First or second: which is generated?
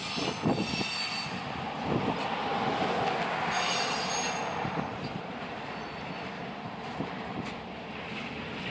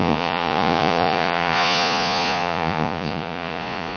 second